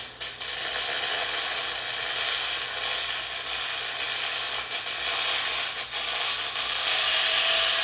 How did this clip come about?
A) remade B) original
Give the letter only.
B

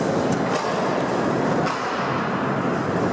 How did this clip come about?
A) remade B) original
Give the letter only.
B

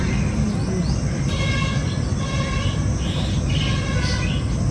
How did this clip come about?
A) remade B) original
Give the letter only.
B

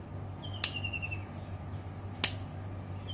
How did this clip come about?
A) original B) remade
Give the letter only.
A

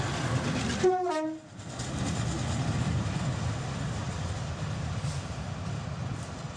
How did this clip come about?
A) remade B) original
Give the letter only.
B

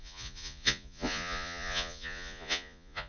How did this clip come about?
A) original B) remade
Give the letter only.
B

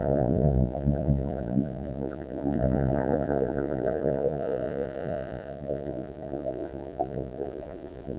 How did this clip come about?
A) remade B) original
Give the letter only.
A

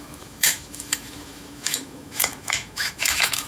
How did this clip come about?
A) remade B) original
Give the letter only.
A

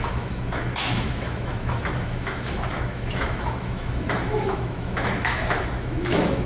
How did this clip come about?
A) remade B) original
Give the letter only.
A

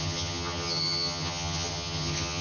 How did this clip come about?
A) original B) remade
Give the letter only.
B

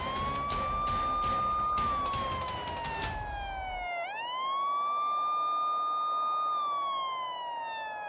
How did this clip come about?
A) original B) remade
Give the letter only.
A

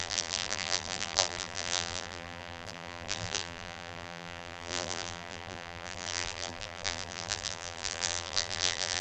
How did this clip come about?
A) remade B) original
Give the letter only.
A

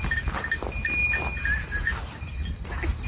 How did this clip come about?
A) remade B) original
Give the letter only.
B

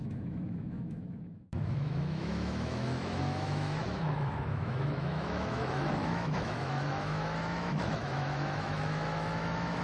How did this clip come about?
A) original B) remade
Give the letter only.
B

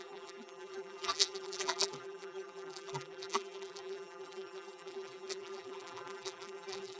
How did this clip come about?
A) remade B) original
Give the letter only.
A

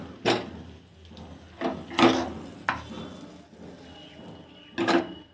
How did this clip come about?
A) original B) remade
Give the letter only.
A